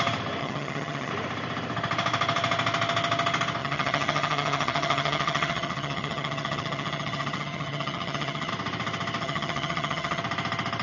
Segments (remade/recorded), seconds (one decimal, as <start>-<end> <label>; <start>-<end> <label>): 0.0-0.4 recorded; 0.4-1.1 remade; 1.1-3.6 recorded; 3.6-8.5 remade; 8.5-9.2 recorded; 9.2-10.2 remade; 10.2-10.8 recorded